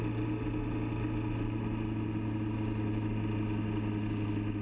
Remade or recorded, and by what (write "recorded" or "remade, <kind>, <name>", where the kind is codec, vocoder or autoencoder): recorded